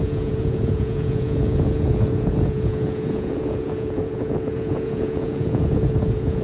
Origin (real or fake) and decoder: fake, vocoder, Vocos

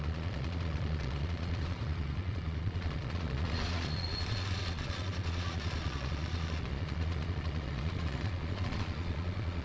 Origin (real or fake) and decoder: fake, vocoder, Vocos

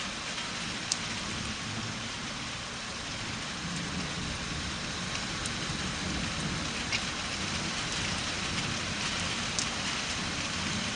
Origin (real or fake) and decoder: real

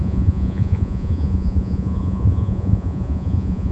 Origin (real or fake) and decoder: fake, vocoder, Vocos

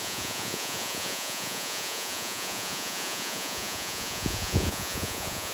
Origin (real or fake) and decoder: fake, vocoder, Vocos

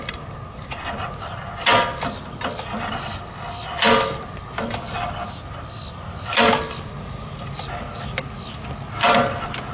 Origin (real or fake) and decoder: real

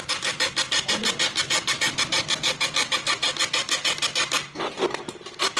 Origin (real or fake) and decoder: real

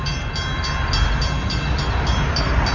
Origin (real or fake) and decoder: real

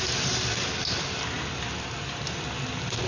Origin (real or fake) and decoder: real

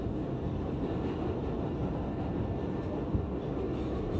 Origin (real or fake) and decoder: real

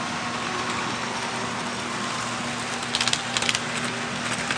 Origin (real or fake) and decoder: real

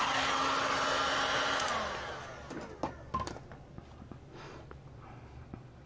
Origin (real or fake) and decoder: real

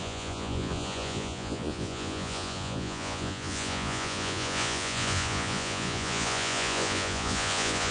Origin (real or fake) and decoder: fake, vocoder, Vocos